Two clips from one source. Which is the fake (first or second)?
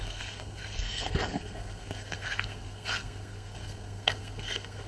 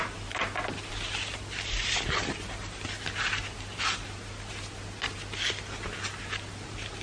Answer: first